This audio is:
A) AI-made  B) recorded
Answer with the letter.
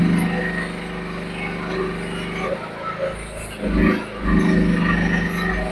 B